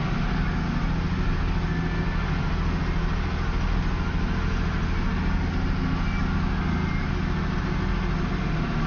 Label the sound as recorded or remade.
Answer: recorded